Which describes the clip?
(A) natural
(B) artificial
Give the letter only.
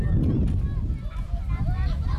A